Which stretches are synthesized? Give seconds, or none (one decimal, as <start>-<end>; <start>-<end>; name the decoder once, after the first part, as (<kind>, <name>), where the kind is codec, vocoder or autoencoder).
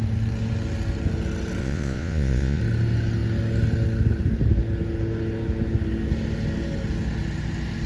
1.6-2.6 (vocoder, Vocos)